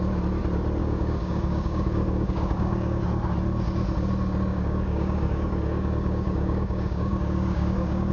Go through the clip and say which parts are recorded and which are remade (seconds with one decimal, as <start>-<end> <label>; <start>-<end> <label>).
0.0-0.8 recorded; 0.8-3.0 remade; 3.0-4.5 recorded; 4.5-8.1 remade